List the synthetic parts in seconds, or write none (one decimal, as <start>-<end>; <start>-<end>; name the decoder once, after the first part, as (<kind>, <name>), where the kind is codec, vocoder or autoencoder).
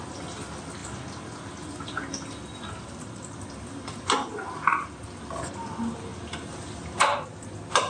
6.1-6.7 (vocoder, BigVGAN v2)